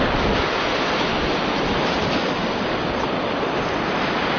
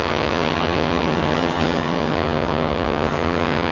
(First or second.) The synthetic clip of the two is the second